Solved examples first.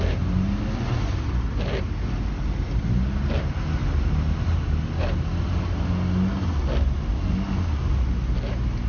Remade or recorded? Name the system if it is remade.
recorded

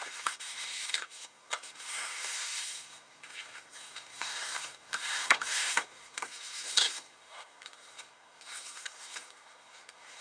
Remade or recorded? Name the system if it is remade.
remade, codec, SNAC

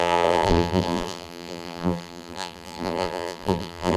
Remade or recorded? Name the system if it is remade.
remade, vocoder, BigVGAN v2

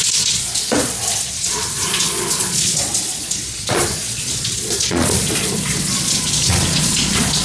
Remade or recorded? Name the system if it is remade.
remade, vocoder, Vocos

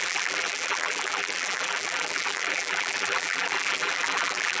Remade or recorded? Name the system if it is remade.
remade, vocoder, BigVGAN v2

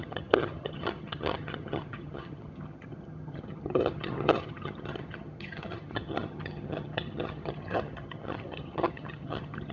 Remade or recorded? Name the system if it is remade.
remade, vocoder, HiFi-GAN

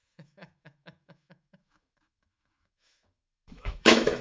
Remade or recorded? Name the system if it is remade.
remade, autoencoder, DAC-VAE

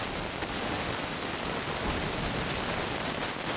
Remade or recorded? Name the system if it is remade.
recorded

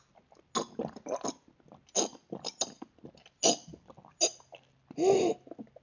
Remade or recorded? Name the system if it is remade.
recorded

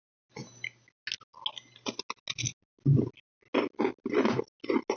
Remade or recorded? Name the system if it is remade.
recorded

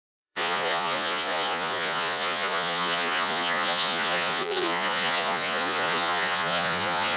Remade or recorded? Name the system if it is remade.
remade, vocoder, Vocos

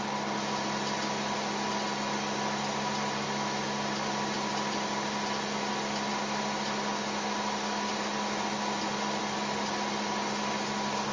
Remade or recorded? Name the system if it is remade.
recorded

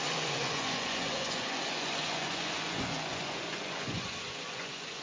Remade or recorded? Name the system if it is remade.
remade, vocoder, Vocos